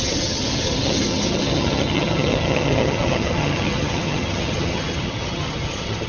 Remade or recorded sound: remade